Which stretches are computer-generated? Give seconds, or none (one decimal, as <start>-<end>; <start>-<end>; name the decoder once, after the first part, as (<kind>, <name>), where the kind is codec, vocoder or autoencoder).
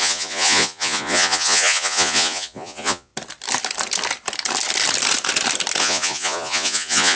0.0-3.1 (vocoder, Vocos); 5.8-7.2